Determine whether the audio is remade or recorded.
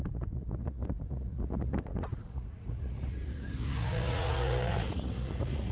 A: remade